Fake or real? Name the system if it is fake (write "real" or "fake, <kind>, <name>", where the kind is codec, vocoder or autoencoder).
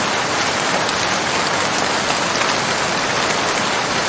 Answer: real